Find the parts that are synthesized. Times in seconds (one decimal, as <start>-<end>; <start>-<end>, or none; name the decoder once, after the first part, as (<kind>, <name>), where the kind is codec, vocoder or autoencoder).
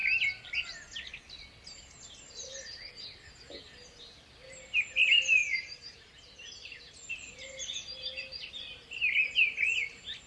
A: 3.6-10.3 (vocoder, BigVGAN v2)